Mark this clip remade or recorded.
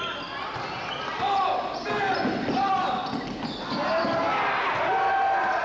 recorded